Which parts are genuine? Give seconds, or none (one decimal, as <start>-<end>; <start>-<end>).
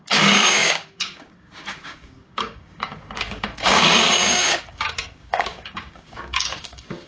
none